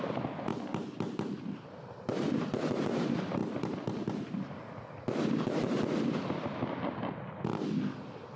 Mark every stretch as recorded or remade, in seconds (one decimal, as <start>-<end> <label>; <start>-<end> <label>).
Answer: 0.0-8.4 recorded